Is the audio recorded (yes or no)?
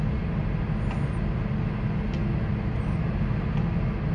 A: yes